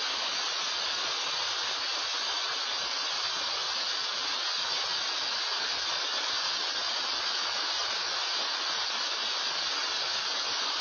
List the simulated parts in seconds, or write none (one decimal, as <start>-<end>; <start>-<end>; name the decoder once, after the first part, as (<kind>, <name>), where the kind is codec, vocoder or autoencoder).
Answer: none